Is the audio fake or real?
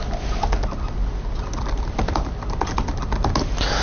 real